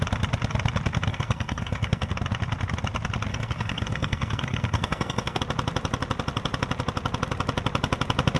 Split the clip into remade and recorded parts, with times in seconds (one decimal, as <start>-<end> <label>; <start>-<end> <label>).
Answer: 0.0-1.1 recorded; 1.1-2.1 remade; 2.1-3.3 recorded; 3.3-5.4 remade; 5.4-8.4 recorded